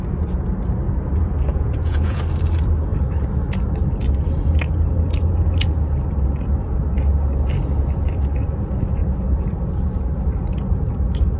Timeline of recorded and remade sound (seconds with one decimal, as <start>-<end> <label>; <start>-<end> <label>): 0.0-1.5 recorded; 1.5-2.2 remade; 2.2-11.4 recorded